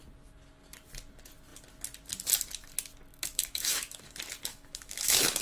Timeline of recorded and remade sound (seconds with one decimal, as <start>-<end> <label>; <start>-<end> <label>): 0.0-3.1 recorded; 3.1-4.0 remade; 4.0-4.5 recorded; 4.5-5.4 remade